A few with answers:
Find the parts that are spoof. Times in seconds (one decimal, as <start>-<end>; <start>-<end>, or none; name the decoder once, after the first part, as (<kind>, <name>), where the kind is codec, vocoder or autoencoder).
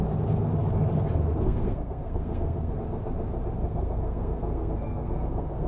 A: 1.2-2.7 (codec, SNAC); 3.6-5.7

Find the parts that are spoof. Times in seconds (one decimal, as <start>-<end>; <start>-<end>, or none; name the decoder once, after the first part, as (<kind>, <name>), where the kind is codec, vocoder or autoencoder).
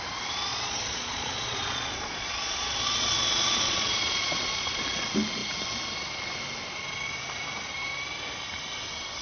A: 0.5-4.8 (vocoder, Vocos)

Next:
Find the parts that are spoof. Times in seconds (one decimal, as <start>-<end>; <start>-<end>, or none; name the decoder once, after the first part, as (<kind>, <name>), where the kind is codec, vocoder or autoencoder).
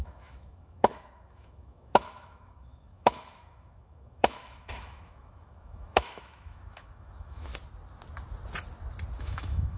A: 0.0-7.5 (autoencoder, DAC-VAE); 9.2-9.8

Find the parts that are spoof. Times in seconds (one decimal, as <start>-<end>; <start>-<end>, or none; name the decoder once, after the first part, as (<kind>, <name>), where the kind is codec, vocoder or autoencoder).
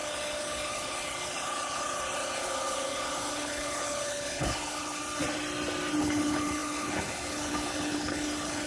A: 0.0-5.0 (codec, HILCodec); 6.0-8.7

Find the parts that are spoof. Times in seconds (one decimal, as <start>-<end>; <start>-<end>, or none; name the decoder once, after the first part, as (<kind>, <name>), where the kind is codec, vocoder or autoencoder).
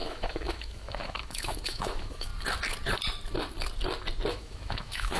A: 0.0-2.3 (autoencoder, DAC-VAE); 4.3-5.2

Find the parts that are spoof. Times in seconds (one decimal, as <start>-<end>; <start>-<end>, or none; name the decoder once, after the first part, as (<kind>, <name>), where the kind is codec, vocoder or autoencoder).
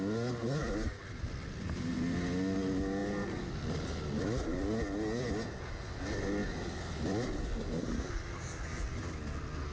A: none